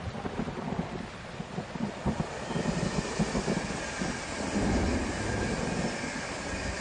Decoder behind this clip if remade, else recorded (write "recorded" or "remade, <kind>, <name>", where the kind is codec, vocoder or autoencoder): recorded